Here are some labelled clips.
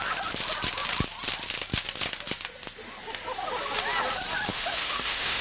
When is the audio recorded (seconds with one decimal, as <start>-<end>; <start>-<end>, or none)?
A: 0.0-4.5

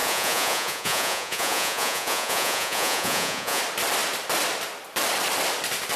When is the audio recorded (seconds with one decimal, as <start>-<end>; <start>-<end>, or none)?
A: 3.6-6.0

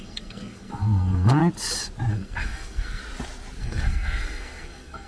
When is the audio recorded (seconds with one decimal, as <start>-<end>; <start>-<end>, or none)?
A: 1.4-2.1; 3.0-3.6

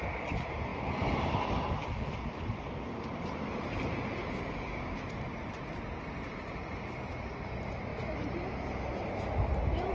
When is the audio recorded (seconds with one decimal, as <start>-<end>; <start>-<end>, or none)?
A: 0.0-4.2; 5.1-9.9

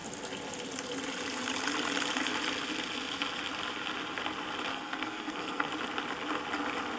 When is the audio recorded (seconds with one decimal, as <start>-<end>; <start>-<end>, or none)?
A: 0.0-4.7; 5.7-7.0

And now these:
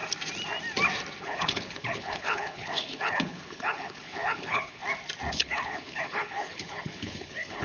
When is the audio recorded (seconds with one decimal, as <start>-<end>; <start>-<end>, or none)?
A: 0.0-1.2; 4.8-5.3

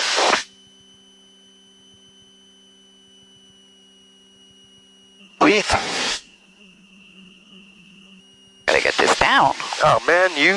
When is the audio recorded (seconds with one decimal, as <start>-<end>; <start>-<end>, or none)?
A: 0.0-5.2; 8.2-10.6

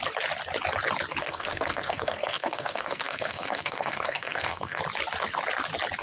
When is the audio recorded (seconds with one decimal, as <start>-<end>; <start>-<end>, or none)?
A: 0.0-1.2; 4.8-6.0